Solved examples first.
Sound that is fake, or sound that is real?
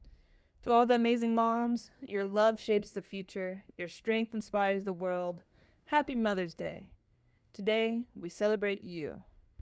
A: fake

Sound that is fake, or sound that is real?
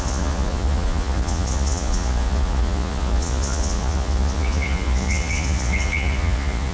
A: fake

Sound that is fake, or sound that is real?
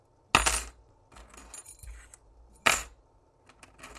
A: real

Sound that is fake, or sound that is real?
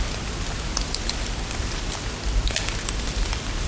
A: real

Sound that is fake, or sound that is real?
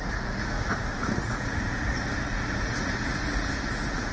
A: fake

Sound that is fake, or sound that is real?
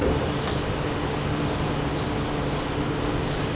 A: real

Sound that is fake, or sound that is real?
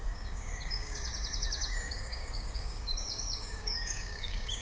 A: fake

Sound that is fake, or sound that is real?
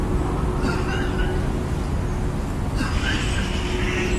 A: real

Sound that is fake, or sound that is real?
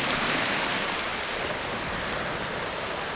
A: real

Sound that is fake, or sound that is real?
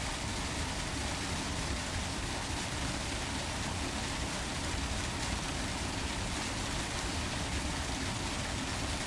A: real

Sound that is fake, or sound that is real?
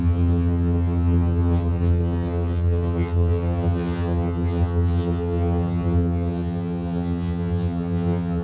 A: fake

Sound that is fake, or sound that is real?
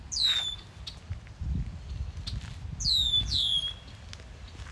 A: real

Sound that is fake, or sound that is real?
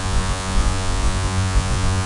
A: fake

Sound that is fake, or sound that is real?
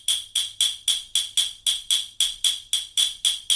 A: real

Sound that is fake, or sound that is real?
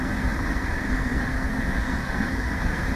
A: fake